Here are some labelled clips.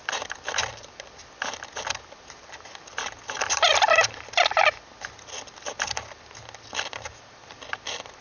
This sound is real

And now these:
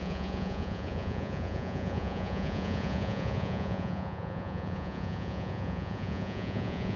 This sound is fake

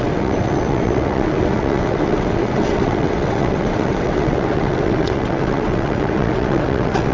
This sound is fake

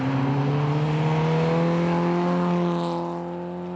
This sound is real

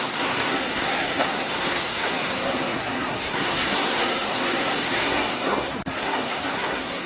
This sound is fake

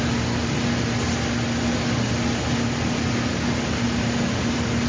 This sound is real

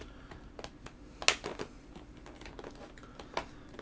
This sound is real